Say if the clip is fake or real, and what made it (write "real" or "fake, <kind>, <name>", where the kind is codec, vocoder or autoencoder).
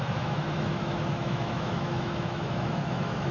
fake, autoencoder, DAC-VAE